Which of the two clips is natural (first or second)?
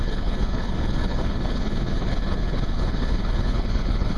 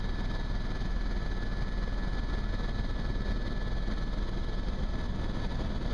second